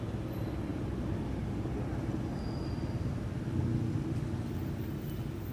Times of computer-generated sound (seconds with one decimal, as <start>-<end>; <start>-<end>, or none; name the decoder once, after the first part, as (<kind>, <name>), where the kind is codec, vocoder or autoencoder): none